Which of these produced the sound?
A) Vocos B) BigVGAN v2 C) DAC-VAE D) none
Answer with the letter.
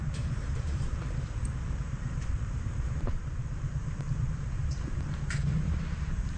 B